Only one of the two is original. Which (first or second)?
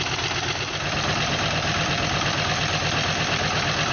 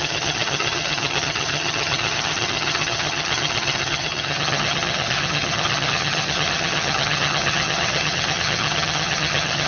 first